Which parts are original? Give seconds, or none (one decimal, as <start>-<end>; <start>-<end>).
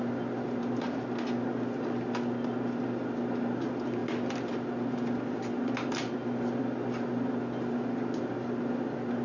0.0-9.2